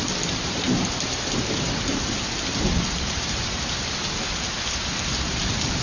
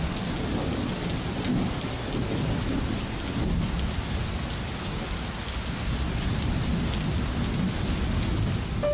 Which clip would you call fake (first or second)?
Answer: first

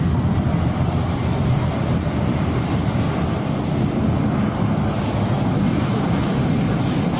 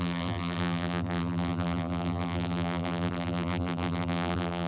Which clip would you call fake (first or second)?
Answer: second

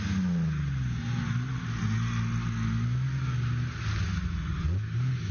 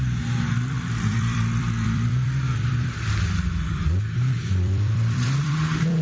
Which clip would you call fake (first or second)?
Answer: second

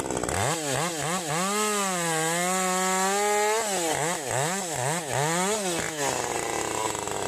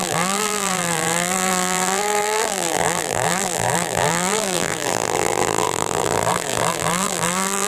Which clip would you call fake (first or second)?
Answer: second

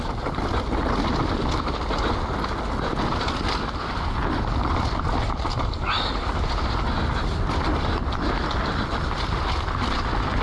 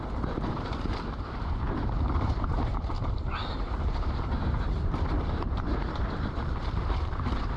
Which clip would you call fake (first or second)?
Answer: second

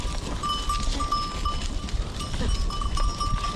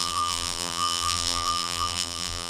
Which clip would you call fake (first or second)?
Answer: second